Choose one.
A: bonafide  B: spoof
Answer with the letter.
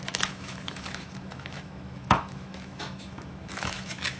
B